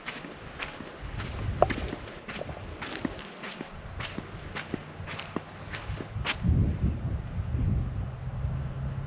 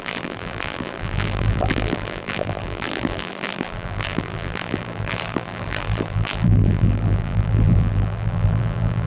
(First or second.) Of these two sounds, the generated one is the second